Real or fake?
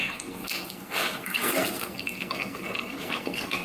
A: fake